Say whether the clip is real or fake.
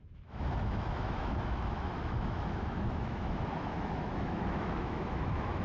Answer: fake